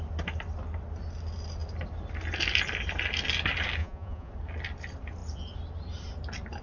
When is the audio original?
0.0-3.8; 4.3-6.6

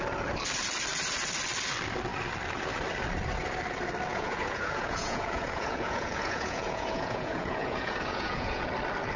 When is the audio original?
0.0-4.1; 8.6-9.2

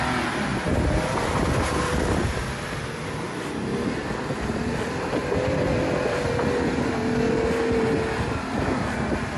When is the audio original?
0.0-9.4

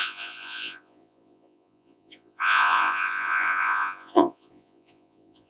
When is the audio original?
none

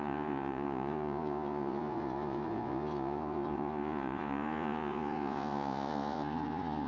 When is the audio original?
none